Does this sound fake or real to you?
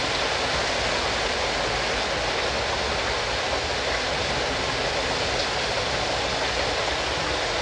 real